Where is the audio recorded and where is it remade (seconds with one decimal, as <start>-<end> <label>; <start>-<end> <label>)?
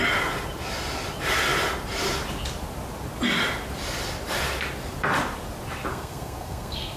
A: 0.0-5.9 recorded; 5.9-7.0 remade